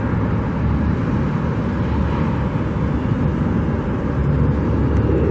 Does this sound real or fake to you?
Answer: real